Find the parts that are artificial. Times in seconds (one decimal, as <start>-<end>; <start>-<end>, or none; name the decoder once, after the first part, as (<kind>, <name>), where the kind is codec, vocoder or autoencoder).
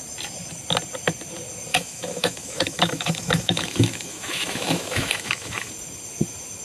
1.7-5.7 (autoencoder, DAC-VAE)